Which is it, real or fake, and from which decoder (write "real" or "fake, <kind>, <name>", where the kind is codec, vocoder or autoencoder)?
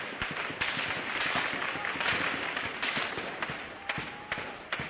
real